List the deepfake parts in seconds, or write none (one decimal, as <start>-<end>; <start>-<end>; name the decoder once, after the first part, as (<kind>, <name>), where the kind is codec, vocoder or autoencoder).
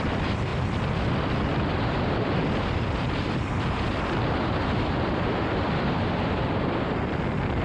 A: 0.0-7.6 (vocoder, BigVGAN v2)